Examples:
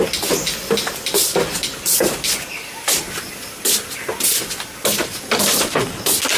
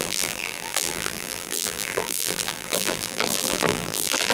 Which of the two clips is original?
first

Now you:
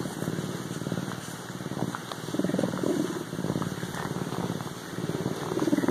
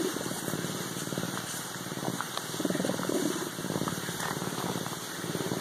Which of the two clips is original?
first